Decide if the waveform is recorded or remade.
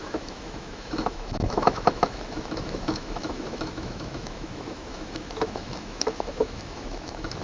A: remade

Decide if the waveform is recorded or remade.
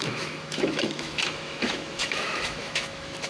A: remade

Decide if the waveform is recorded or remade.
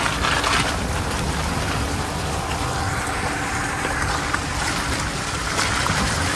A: recorded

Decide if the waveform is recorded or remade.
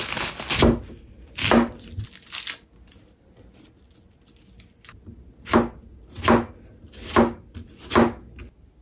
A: recorded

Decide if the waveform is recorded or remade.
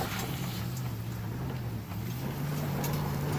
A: recorded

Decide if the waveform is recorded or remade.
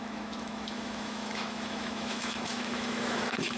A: remade